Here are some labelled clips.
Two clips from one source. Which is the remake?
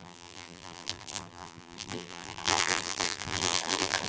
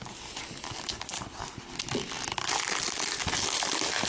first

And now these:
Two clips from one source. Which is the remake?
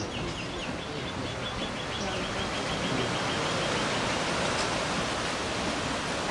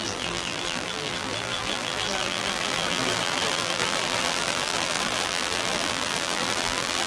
second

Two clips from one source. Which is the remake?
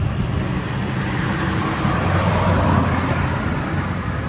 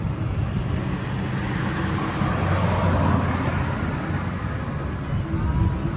first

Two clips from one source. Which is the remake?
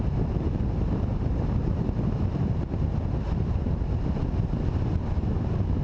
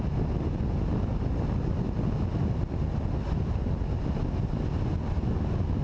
first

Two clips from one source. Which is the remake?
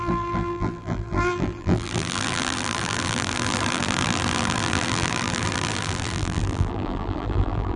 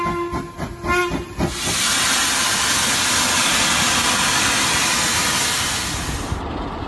first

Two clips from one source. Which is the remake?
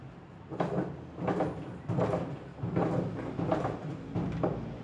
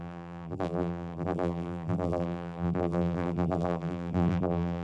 second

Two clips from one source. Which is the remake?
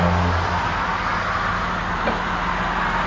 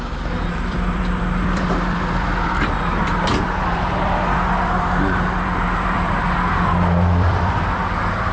second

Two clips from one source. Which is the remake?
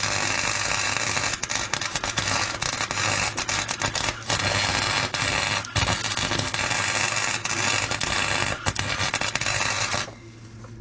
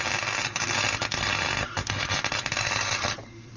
second